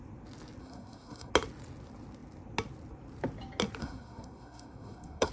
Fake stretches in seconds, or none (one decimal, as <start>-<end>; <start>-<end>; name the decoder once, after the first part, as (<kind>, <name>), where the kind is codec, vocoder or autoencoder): 0.6-1.3 (codec, SNAC); 3.8-5.3

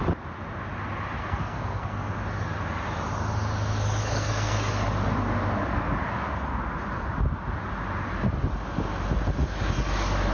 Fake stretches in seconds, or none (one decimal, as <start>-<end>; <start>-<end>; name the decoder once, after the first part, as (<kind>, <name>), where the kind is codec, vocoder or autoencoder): 1.2-2.1 (codec, SNAC); 4.0-4.7

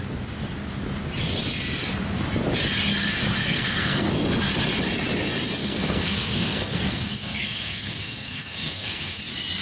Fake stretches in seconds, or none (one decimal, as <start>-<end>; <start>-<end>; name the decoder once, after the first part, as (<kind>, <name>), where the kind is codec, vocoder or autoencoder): 3.4-4.1 (codec, SNAC); 5.6-9.2

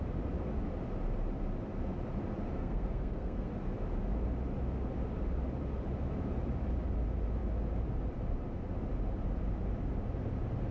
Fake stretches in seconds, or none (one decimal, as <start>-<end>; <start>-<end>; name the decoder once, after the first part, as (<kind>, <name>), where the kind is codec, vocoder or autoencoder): 2.6-3.5 (codec, SNAC)

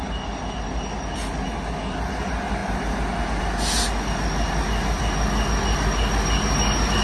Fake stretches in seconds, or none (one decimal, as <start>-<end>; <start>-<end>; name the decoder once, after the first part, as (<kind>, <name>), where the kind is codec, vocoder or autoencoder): none

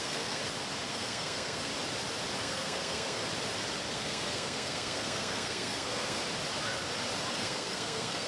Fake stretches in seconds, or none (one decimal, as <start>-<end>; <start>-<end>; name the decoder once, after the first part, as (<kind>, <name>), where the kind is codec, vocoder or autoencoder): 0.0-0.4 (codec, SNAC); 0.9-1.7; 2.4-3.2; 3.9-6.2; 7.3-8.3

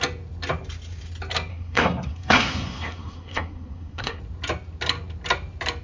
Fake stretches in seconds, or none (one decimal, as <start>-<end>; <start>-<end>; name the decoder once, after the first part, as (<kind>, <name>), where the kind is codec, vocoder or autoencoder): 1.5-4.2 (codec, SNAC)